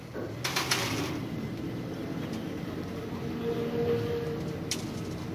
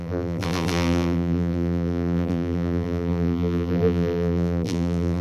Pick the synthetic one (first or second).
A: second